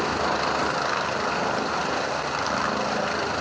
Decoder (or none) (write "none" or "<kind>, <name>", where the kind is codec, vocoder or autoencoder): none